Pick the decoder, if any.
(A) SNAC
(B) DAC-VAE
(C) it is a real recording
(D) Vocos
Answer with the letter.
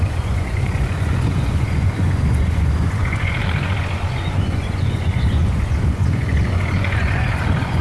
D